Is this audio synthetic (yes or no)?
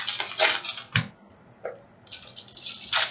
no